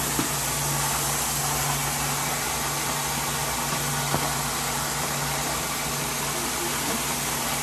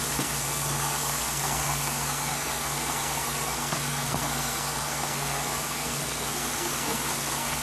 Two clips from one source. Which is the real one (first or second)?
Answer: first